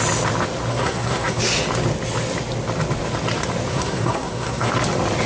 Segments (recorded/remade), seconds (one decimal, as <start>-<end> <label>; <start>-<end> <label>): 0.0-0.7 recorded; 0.7-1.4 remade; 1.4-3.7 recorded; 3.7-4.7 remade; 4.7-5.3 recorded